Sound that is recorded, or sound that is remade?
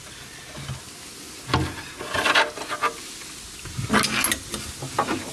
recorded